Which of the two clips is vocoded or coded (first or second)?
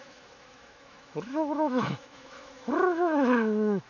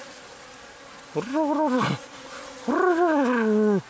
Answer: first